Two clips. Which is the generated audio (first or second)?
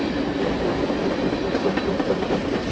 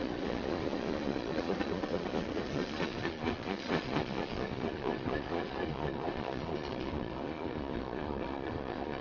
second